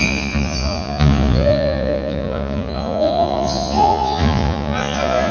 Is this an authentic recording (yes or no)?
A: no